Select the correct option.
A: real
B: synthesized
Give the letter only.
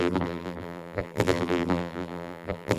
B